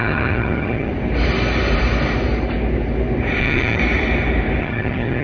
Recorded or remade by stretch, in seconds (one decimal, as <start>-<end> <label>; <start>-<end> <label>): 0.0-0.9 remade; 0.9-3.4 recorded; 3.4-3.8 remade; 3.8-4.6 recorded; 4.6-5.2 remade